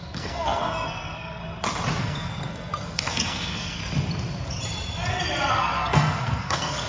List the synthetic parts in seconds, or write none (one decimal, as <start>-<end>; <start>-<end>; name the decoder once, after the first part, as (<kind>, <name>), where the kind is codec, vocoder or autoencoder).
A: 0.0-1.4 (codec, SNAC); 2.0-3.8; 5.5-6.9